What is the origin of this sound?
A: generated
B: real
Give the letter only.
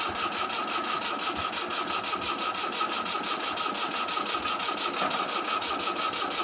B